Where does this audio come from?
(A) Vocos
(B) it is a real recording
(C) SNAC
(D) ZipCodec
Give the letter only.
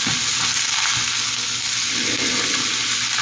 B